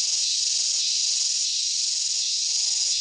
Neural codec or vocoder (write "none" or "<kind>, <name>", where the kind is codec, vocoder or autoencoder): none